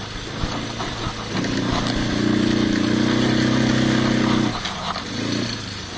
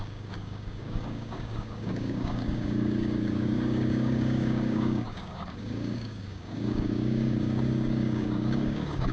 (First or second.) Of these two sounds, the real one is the first